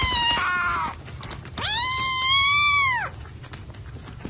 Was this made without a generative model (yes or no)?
yes